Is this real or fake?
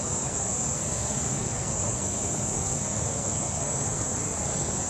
fake